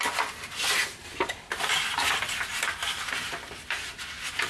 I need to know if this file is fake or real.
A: real